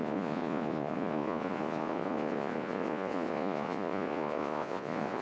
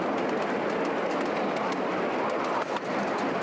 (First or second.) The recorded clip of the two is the second